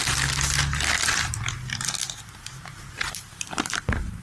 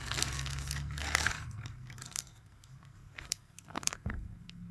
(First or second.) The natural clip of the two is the first